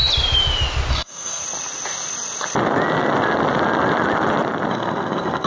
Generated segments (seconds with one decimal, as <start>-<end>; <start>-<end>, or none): 0.9-1.4; 4.7-5.5